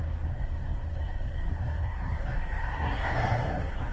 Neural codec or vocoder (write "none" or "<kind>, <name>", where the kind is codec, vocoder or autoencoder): codec, SNAC